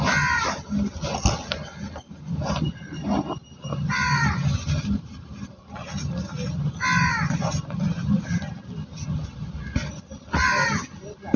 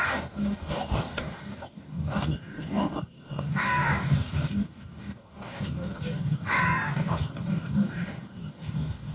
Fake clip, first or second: second